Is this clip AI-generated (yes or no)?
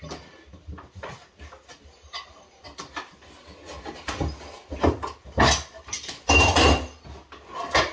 no